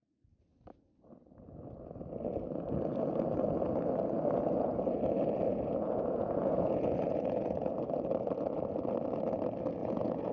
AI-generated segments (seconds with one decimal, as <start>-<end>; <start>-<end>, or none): 5.5-7.7; 9.8-10.3